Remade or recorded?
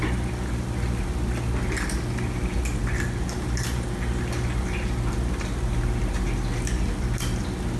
recorded